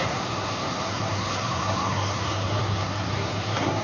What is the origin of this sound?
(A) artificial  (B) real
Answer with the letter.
A